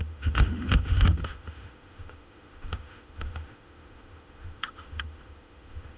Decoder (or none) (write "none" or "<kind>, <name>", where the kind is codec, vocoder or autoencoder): autoencoder, DAC-VAE